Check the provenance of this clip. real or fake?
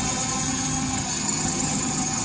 fake